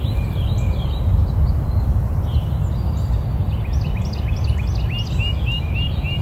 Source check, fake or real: real